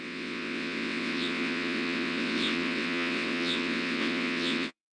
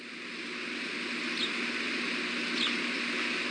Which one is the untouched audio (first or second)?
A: second